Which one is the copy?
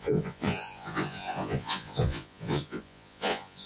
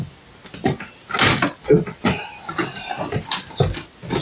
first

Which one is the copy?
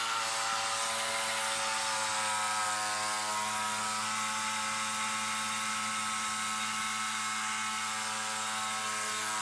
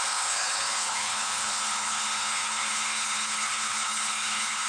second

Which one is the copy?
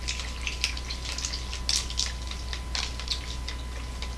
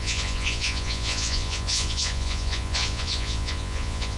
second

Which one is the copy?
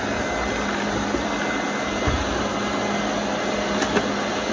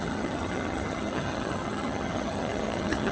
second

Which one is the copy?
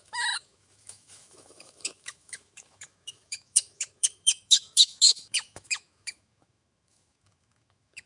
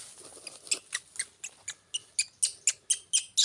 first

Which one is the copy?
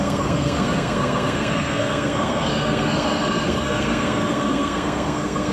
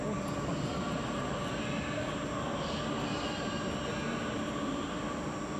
first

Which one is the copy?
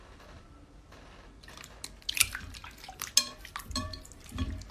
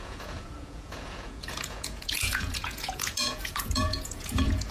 second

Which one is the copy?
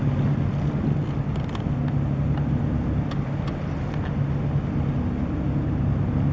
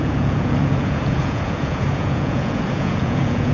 second